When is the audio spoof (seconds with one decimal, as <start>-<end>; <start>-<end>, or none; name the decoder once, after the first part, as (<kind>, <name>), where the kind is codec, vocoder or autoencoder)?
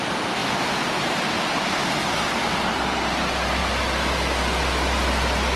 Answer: 0.4-1.3 (vocoder, BigVGAN v2); 1.8-2.8